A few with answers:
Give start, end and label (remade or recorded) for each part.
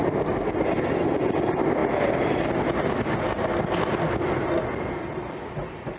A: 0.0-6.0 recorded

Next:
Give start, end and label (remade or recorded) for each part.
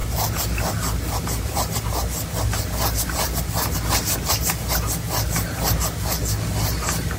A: 0.0-7.2 recorded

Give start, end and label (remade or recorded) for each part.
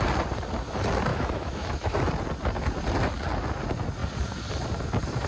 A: 0.0-1.1 recorded; 1.1-2.1 remade; 2.1-5.3 recorded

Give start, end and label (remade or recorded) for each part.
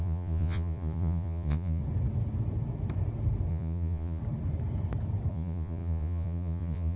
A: 0.0-1.8 remade; 1.8-3.5 recorded; 3.5-4.2 remade; 4.2-5.3 recorded; 5.3-7.0 remade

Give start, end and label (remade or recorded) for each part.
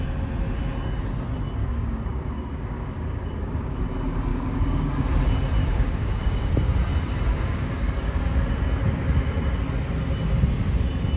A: 0.0-1.6 recorded; 1.6-3.8 remade; 3.8-4.3 recorded; 4.3-4.9 remade; 4.9-5.6 recorded; 5.6-6.5 remade; 6.5-7.3 recorded; 7.3-8.2 remade; 8.2-11.2 recorded